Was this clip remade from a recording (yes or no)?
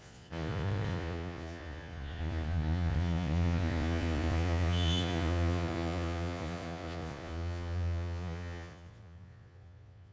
yes